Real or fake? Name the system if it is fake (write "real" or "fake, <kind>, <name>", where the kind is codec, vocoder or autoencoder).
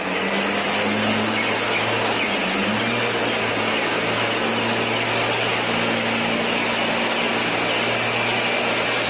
real